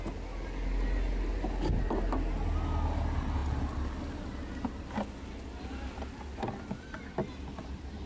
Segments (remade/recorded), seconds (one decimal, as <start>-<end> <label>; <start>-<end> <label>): 0.0-6.3 recorded; 6.3-8.1 remade